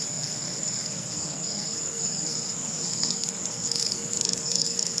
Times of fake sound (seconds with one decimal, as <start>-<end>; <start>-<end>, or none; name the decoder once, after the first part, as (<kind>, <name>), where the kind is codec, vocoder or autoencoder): 0.0-5.0 (codec, SNAC)